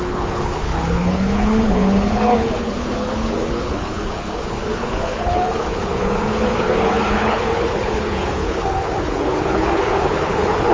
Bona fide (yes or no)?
no